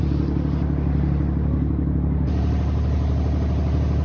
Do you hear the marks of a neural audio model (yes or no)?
no